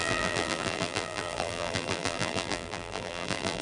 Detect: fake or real fake